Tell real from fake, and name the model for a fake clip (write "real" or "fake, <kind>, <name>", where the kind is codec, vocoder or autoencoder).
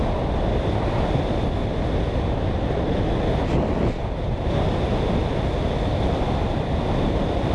real